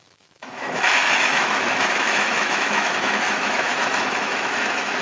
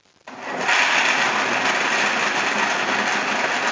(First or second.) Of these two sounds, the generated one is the first